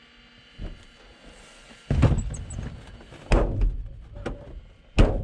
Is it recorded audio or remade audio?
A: recorded